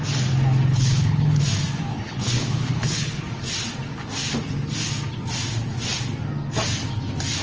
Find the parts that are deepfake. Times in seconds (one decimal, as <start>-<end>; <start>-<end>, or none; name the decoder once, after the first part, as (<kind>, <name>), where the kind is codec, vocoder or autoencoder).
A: 0.7-1.4 (codec, HILCodec); 1.9-3.2